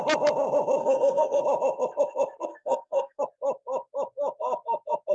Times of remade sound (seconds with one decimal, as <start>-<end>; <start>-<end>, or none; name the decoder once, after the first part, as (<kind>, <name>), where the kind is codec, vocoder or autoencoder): 0.8-1.4 (codec, SNAC); 2.5-3.2